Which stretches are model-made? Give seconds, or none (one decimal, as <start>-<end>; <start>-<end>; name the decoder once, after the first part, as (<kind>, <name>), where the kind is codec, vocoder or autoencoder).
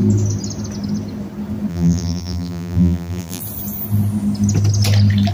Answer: 1.7-3.4 (vocoder, BigVGAN v2)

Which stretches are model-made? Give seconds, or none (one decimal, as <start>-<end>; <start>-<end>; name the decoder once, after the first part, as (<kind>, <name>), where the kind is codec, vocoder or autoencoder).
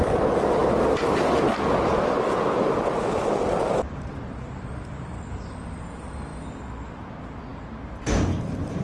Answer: none